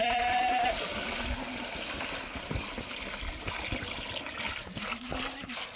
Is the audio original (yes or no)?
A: yes